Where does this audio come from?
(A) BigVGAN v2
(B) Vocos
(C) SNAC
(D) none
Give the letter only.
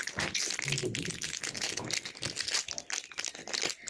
D